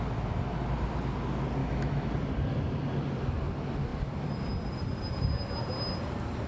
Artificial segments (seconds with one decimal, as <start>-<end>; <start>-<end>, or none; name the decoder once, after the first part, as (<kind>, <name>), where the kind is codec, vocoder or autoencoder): 1.6-2.1 (autoencoder, DAC-VAE)